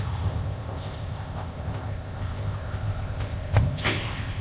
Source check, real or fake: fake